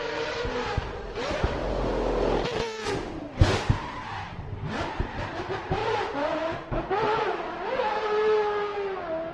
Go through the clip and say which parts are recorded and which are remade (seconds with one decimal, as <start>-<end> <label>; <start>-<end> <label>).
0.0-1.6 remade; 1.6-2.9 recorded; 2.9-8.7 remade; 8.7-9.3 recorded